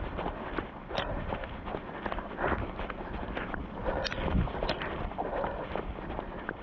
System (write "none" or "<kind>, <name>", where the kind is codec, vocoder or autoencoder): none